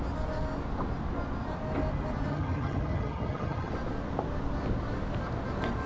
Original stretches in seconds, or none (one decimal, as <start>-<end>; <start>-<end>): 0.0-2.3; 3.7-5.9